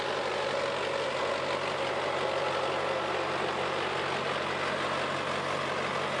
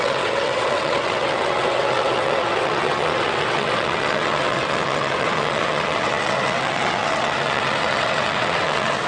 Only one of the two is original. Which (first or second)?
first